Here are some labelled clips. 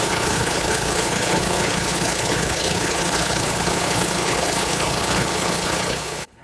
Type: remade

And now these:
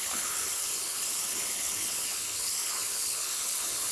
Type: remade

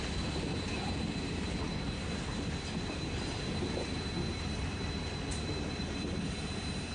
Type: recorded